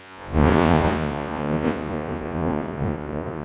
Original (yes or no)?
no